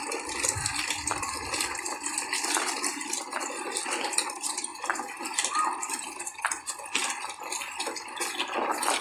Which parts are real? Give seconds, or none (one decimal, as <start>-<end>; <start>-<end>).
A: 0.0-4.7; 6.7-9.0